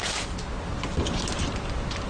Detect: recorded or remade recorded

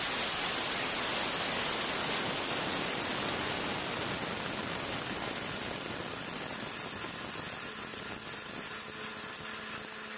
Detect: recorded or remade recorded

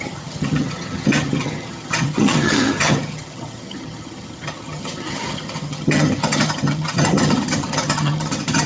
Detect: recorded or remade remade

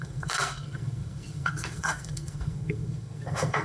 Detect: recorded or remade remade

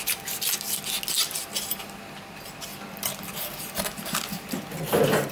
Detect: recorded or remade recorded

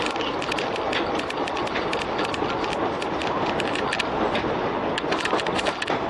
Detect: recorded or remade recorded